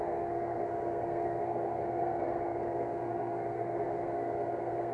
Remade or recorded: remade